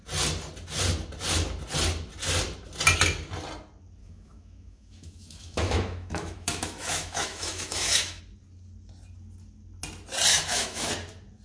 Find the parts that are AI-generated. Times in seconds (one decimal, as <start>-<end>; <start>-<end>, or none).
4.0-8.2; 10.3-10.9